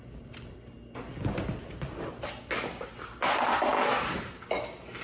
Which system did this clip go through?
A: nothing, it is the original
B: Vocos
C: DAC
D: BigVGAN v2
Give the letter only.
A